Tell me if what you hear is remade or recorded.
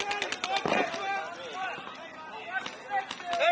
recorded